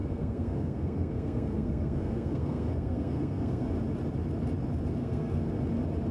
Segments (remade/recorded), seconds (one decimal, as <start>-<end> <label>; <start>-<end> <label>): 0.0-3.7 remade; 3.7-5.0 recorded; 5.0-5.5 remade; 5.5-6.1 recorded